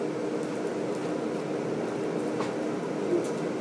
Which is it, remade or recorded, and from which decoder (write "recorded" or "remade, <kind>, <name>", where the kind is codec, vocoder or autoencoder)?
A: recorded